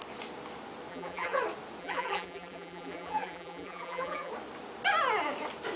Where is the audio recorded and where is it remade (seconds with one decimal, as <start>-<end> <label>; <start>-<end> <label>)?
0.0-0.9 recorded; 0.9-1.4 remade; 1.4-1.8 recorded; 1.8-4.3 remade; 4.3-5.8 recorded